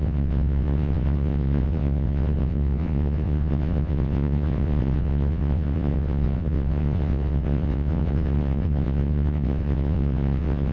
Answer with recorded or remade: remade